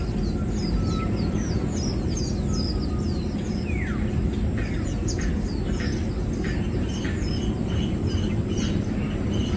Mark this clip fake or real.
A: real